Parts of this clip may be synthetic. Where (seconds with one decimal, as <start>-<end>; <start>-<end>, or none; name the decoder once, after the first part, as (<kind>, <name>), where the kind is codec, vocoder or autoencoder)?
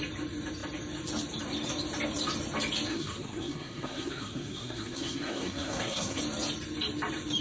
2.9-6.2 (codec, SNAC)